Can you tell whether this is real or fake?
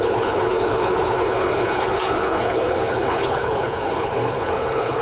fake